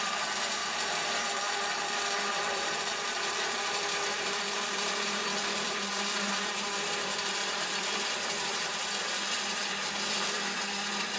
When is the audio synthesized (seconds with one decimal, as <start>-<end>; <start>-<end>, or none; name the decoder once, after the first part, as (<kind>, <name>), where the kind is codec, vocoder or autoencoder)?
0.0-0.6 (vocoder, BigVGAN v2); 2.5-11.2